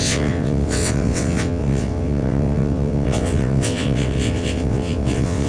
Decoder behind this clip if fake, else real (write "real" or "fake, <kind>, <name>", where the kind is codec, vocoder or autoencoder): fake, vocoder, WaveNeXt